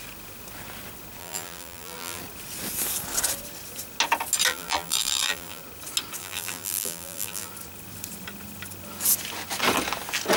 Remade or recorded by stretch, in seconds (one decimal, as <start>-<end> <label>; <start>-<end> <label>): 0.0-1.2 recorded; 1.2-2.2 remade; 2.2-4.5 recorded; 4.5-5.6 remade; 5.6-6.2 recorded; 6.2-7.5 remade; 7.5-10.4 recorded